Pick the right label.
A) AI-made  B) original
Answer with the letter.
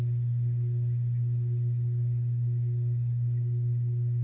B